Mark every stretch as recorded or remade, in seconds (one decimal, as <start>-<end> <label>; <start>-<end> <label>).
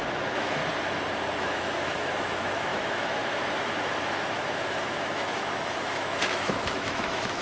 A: 0.0-0.6 remade; 0.6-1.4 recorded; 1.4-7.4 remade